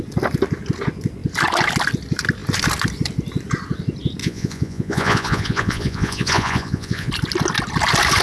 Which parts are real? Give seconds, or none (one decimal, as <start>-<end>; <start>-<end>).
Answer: 0.0-4.2; 7.1-8.2